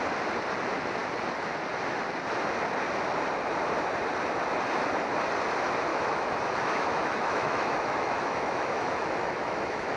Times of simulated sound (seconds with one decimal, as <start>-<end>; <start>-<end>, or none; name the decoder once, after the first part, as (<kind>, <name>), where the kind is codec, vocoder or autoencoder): 5.9-10.0 (autoencoder, DAC-VAE)

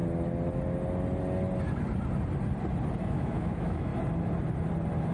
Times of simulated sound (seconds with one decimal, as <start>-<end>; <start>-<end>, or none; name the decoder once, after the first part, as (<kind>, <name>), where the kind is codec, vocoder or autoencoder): 3.1-3.9 (autoencoder, DAC-VAE)

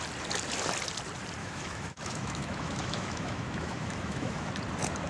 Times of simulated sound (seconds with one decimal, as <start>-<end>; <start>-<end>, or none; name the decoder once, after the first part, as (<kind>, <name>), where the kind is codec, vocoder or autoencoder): 1.4-4.5 (autoencoder, DAC-VAE)

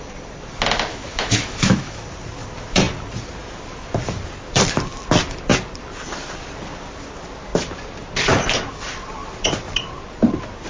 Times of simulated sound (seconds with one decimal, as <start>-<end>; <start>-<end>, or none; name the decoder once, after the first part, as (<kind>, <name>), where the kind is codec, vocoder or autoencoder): 0.9-2.0 (autoencoder, DAC-VAE)

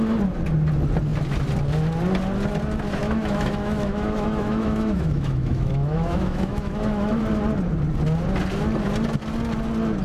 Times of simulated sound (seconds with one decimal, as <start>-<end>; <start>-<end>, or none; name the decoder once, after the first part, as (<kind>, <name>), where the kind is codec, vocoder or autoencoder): 3.0-7.2 (autoencoder, DAC-VAE)

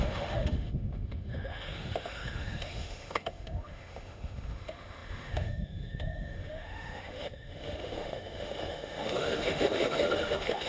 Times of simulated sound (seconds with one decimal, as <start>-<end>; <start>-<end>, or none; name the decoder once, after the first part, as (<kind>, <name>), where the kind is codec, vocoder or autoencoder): 0.0-10.7 (autoencoder, DAC-VAE)

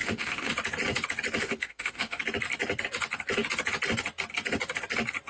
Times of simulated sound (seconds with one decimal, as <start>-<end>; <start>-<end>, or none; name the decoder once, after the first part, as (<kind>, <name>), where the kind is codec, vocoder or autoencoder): 0.0-0.5 (autoencoder, DAC-VAE); 1.4-2.2